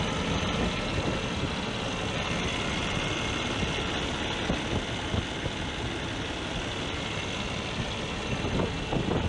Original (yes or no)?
yes